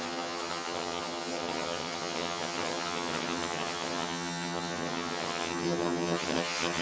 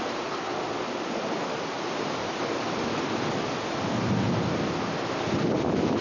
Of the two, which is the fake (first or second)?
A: first